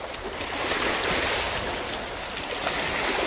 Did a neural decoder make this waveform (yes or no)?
no